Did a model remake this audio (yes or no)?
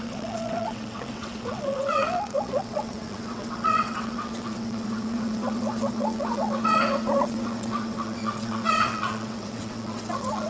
yes